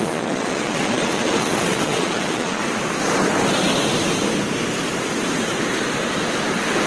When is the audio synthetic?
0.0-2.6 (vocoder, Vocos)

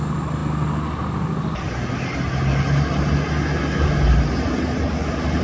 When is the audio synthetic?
none

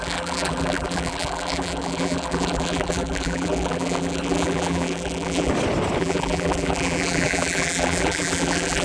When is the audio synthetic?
0.0-5.5 (vocoder, BigVGAN v2); 6.0-8.8